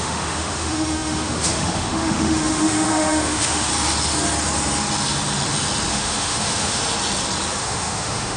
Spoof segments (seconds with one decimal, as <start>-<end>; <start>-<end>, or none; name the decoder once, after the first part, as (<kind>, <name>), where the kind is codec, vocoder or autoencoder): 0.0-3.7 (autoencoder, DAC-VAE); 5.9-6.8; 7.6-8.4